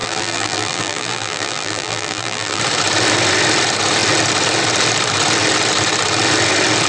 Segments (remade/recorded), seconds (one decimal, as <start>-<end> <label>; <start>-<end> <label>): 0.0-2.6 remade; 2.6-6.9 recorded